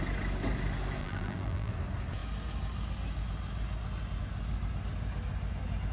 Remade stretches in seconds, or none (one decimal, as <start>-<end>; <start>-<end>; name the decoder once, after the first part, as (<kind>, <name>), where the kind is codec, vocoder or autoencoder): 1.0-1.7 (vocoder, BigVGAN v2)